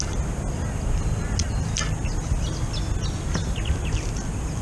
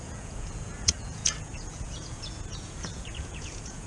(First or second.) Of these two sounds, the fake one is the second